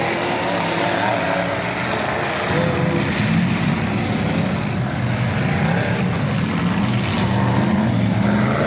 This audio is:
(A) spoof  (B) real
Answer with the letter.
B